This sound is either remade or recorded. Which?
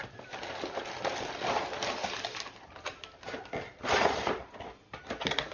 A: recorded